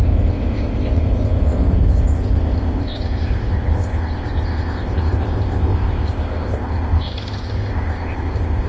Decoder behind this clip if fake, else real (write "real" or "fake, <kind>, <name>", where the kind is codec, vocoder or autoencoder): fake, codec, ZipCodec